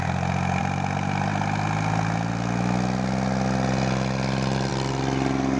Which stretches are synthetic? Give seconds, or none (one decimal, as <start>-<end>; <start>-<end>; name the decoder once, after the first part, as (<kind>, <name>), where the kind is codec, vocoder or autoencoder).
none